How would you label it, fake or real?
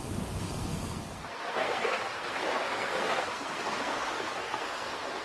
fake